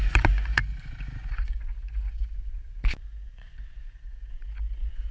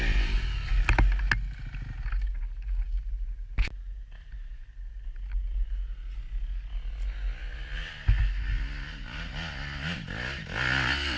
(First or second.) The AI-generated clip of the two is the first